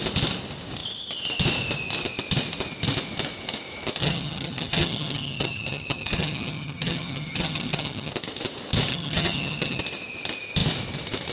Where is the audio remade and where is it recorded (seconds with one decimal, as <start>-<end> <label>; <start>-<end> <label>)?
0.0-4.0 recorded; 4.0-8.1 remade; 8.1-8.9 recorded; 8.9-9.8 remade; 9.8-11.3 recorded